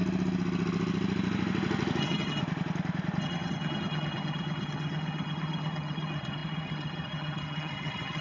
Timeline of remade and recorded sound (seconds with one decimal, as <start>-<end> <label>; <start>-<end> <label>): 0.0-2.0 recorded; 2.0-2.4 remade; 2.4-3.2 recorded; 3.2-8.2 remade